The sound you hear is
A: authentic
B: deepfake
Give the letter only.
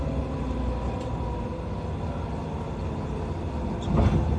A